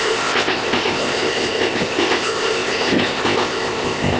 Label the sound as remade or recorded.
remade